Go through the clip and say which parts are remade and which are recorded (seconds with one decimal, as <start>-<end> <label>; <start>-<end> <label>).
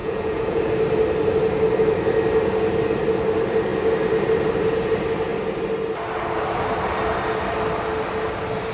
0.0-0.6 remade; 0.6-8.7 recorded